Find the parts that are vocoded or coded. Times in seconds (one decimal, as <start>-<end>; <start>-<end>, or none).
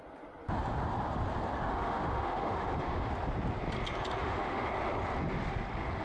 1.7-3.1; 4.2-4.7